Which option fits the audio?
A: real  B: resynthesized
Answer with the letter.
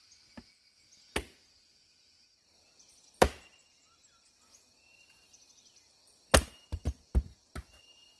A